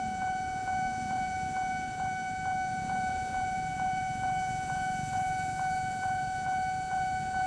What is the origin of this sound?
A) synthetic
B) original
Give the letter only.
A